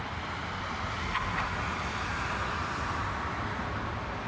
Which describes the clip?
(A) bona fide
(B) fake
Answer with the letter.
A